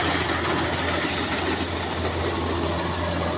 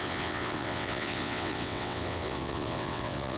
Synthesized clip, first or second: second